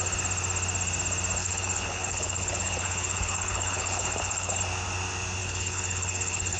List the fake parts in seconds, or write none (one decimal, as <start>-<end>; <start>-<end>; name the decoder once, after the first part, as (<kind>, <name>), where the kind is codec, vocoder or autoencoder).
1.4-4.6 (codec, HILCodec); 5.4-6.6